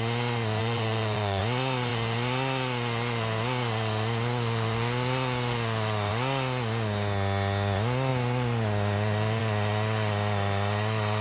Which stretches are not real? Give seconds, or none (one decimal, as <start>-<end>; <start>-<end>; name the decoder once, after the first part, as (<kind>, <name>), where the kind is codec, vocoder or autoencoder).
0.6-1.4 (vocoder, Vocos)